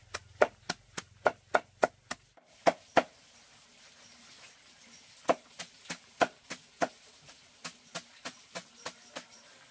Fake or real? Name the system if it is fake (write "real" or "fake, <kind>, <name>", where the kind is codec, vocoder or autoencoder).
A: real